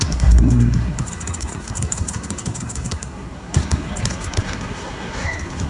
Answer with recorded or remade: remade